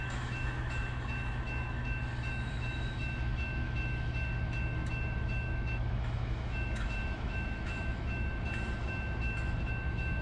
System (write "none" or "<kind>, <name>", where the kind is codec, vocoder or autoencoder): autoencoder, DAC-VAE